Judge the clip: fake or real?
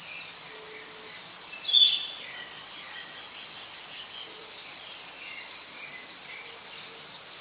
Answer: real